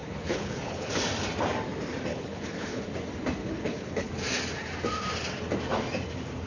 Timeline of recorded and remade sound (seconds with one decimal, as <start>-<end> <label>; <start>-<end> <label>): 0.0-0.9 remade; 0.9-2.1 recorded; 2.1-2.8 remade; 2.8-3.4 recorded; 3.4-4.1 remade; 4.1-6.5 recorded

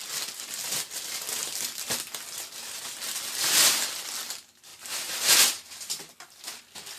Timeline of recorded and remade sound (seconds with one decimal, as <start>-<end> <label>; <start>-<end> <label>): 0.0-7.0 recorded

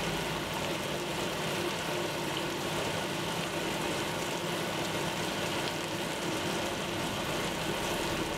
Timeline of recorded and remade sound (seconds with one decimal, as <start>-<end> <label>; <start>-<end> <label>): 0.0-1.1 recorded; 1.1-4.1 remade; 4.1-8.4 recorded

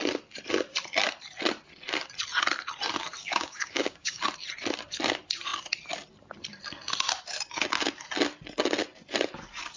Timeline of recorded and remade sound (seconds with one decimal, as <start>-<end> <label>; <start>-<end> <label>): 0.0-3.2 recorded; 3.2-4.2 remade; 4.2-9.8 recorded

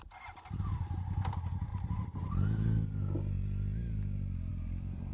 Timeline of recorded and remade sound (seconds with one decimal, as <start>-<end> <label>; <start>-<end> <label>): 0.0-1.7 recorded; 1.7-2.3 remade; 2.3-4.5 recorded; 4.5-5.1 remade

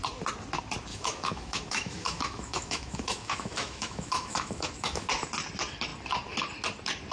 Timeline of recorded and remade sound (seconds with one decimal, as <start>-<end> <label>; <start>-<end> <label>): 0.0-0.9 recorded; 0.9-5.1 remade; 5.1-7.1 recorded

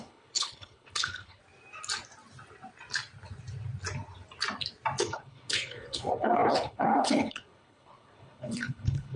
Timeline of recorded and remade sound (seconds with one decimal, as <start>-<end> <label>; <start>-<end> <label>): 0.0-1.4 remade; 1.4-5.0 recorded; 5.0-9.2 remade

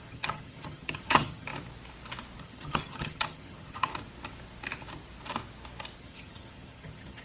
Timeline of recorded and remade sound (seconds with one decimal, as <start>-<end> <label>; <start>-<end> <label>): 0.0-1.5 remade; 1.5-2.4 recorded; 2.4-3.9 remade; 3.9-6.0 recorded; 6.0-7.2 remade